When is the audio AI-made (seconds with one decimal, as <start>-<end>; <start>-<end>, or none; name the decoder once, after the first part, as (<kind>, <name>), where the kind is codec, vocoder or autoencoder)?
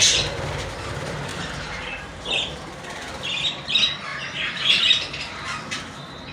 1.3-3.2 (vocoder, BigVGAN v2)